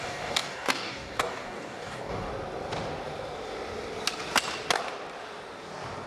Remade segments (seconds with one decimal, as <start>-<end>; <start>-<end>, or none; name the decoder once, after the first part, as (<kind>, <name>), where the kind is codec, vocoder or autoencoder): 0.0-2.3 (codec, DAC)